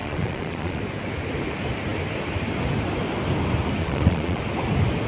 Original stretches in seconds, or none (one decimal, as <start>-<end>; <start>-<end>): 0.8-3.8; 4.4-5.1